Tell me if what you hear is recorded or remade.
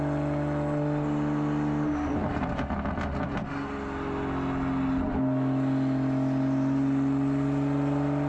recorded